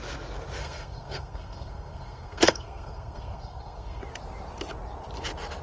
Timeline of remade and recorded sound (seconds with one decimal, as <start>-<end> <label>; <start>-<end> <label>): 0.0-0.6 recorded; 0.6-4.0 remade; 4.0-5.6 recorded